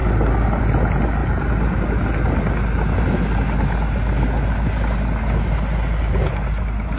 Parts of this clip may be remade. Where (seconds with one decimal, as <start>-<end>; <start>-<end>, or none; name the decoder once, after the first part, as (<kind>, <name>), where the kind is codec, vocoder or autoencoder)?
none